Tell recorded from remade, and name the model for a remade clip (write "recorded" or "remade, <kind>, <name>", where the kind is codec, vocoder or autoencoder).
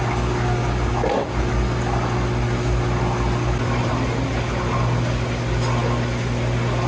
recorded